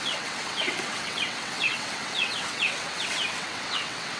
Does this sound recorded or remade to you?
remade